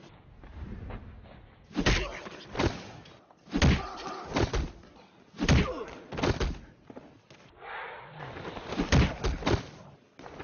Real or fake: real